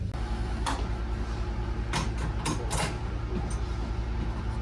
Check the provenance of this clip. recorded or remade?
recorded